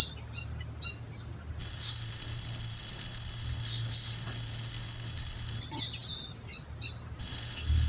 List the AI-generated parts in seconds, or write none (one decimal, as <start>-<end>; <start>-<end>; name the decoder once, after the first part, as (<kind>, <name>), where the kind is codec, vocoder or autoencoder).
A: 1.6-5.6 (codec, SNAC); 7.2-7.9